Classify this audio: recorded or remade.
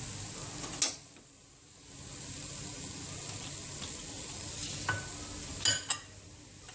recorded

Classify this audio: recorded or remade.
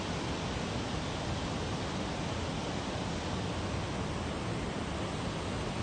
recorded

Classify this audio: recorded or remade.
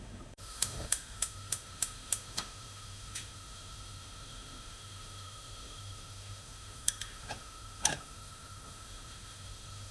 remade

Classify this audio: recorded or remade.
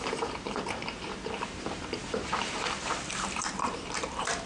remade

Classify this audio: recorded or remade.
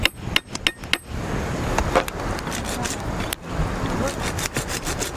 recorded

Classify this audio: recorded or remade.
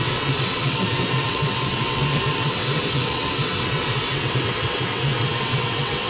remade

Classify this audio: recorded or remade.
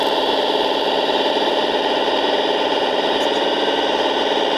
remade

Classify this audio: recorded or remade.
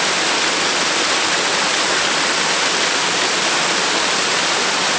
recorded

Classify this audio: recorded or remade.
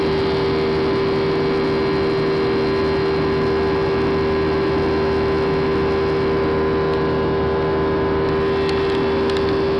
recorded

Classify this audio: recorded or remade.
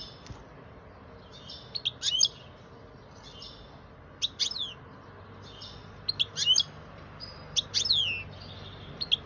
recorded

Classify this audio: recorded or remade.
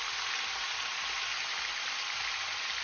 recorded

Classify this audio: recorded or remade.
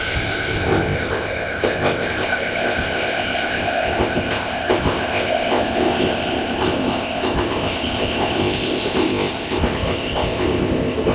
remade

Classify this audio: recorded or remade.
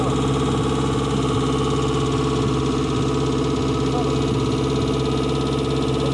recorded